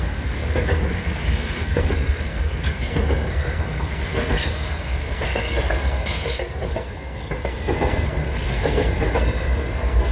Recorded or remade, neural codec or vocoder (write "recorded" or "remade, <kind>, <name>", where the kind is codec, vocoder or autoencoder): remade, codec, SNAC